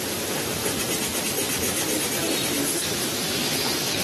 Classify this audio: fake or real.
real